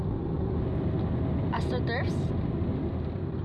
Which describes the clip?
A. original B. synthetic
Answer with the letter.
A